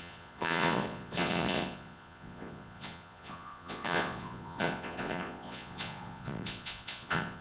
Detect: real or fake fake